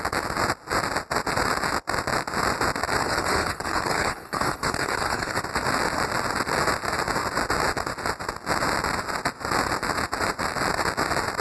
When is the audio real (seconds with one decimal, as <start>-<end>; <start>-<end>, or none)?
0.0-3.0; 5.4-11.4